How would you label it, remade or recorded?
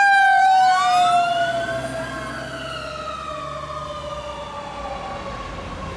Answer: recorded